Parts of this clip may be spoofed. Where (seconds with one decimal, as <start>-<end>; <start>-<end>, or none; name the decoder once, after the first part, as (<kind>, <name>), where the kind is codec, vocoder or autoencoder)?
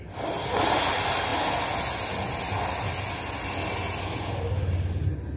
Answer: none